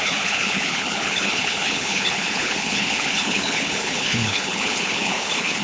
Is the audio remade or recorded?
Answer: remade